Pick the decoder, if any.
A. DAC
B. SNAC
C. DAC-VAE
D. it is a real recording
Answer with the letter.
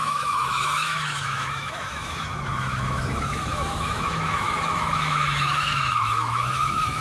C